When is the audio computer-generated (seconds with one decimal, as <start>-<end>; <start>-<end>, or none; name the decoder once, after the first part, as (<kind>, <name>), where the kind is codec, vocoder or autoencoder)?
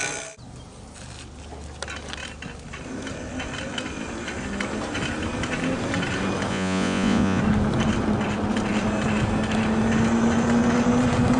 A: 6.5-7.4 (vocoder, Vocos)